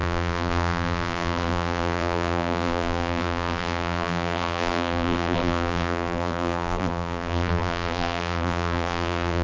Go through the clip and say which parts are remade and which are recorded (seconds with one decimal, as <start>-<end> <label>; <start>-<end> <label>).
0.0-9.4 remade